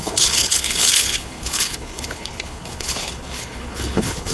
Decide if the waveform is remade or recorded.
remade